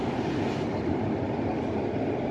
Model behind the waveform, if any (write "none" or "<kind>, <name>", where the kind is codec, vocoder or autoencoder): none